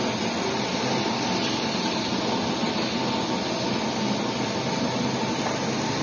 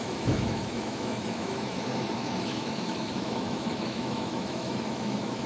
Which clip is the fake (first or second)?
second